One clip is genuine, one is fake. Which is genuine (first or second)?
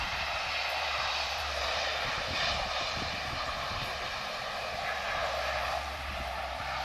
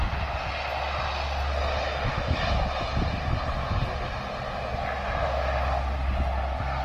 second